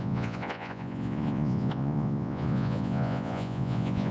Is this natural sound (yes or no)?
no